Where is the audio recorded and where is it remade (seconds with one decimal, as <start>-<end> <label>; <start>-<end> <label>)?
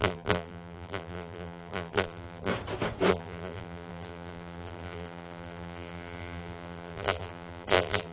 0.0-2.5 remade; 2.5-3.1 recorded; 3.1-8.1 remade